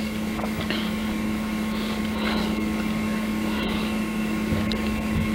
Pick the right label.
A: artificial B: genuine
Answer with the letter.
A